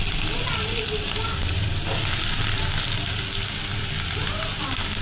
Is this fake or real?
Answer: real